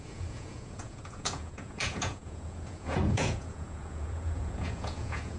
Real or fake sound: fake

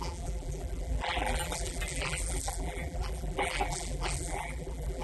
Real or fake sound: fake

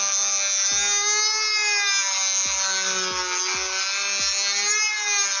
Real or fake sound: real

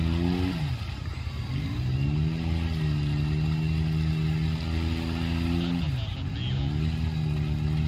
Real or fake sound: real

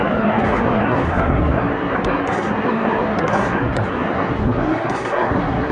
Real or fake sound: fake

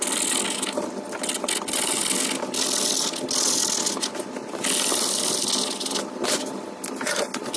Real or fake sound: real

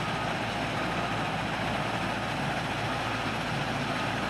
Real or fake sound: real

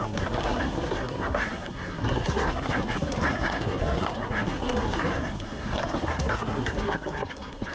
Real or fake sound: fake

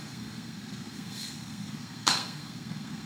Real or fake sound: fake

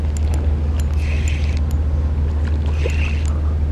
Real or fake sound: real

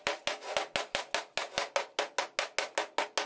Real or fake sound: real